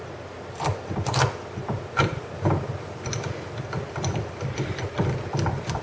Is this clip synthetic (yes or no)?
no